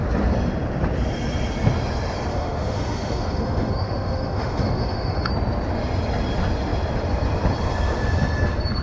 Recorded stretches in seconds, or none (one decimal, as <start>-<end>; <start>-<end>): 0.0-2.3; 5.3-8.8